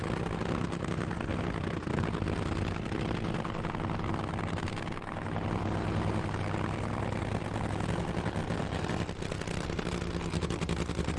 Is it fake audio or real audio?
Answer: real